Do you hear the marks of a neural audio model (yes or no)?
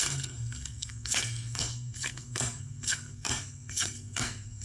yes